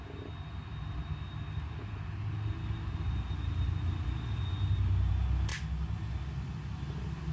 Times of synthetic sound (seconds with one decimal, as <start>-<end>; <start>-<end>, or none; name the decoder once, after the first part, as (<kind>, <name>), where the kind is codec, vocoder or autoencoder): none